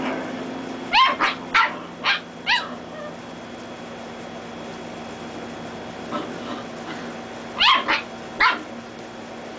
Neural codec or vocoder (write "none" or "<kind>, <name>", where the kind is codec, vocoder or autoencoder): none